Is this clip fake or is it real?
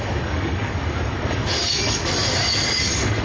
fake